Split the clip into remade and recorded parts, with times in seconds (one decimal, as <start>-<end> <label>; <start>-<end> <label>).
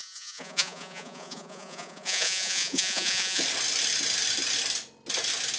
0.0-3.4 remade; 3.4-5.6 recorded